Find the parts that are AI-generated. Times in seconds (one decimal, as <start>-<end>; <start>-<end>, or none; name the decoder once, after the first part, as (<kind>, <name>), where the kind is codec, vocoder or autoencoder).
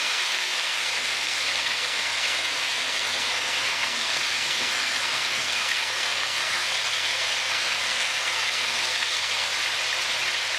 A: 0.0-9.5 (codec, SNAC)